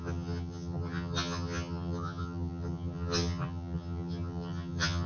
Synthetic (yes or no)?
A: yes